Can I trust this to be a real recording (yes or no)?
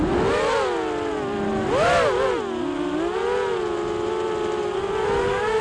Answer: yes